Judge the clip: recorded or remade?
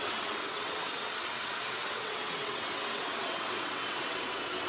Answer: remade